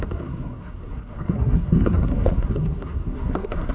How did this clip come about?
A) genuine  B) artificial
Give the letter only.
B